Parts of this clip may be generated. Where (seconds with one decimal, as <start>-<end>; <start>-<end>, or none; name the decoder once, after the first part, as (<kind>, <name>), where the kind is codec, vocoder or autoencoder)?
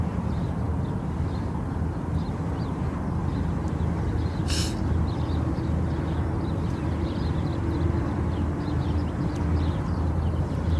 none